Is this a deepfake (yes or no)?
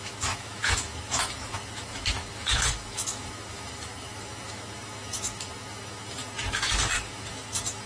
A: yes